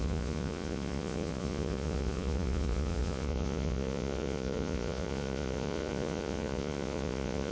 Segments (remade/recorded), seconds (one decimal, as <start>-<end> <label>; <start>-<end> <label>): 0.0-7.5 remade